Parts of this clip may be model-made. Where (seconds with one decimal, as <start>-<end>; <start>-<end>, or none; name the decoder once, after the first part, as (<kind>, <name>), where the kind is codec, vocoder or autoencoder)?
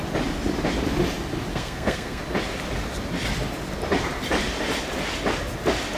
1.5-2.2 (codec, SNAC)